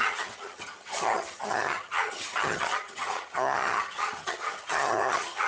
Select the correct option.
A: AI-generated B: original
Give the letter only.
A